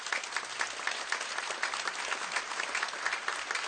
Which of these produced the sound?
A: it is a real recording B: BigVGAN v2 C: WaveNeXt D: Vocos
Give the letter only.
A